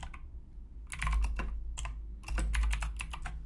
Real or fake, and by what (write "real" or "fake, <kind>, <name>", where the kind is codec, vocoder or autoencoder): real